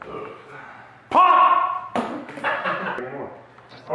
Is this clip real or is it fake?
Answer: real